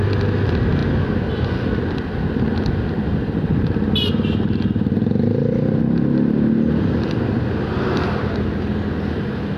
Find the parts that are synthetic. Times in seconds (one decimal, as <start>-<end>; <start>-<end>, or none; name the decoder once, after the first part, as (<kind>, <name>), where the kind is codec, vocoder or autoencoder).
none